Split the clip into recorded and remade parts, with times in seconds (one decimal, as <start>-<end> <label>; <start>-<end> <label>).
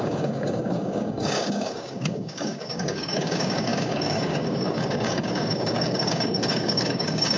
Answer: 0.0-7.4 remade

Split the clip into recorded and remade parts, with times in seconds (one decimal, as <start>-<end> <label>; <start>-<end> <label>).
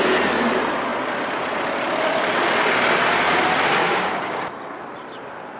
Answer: 0.0-3.8 recorded; 3.8-4.5 remade; 4.5-5.6 recorded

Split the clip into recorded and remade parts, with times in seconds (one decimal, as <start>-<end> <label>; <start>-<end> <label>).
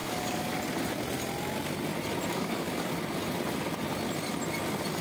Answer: 0.0-0.6 remade; 0.6-2.3 recorded; 2.3-2.9 remade; 2.9-5.0 recorded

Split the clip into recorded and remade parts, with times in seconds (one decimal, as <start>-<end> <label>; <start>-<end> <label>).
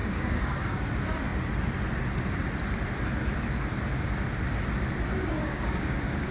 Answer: 0.0-0.9 remade; 0.9-5.1 recorded; 5.1-6.3 remade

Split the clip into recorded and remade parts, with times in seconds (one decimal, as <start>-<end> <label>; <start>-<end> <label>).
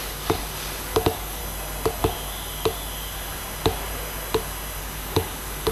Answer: 0.0-1.4 remade; 1.4-4.8 recorded; 4.8-5.7 remade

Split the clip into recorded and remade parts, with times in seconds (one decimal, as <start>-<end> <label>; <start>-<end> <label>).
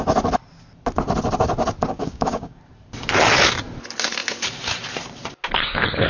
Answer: 0.0-1.9 recorded; 1.9-2.6 remade; 2.6-6.1 recorded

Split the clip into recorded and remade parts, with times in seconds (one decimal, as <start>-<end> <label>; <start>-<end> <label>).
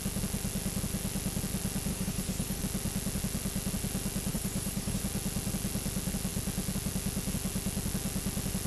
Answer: 0.0-1.9 recorded; 1.9-2.6 remade; 2.6-4.3 recorded; 4.3-5.0 remade; 5.0-8.7 recorded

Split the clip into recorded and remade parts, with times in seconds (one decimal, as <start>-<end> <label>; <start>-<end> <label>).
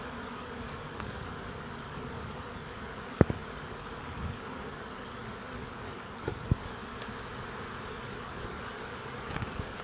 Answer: 0.0-6.8 remade; 6.8-7.9 recorded; 7.9-9.8 remade